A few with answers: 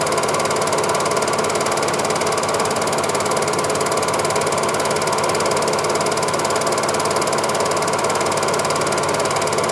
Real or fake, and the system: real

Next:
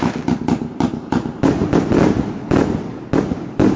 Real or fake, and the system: real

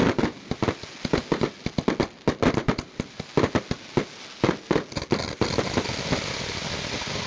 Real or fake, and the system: real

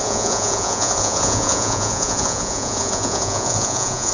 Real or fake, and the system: fake, vocoder, Vocos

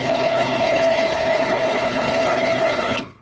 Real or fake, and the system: fake, codec, HILCodec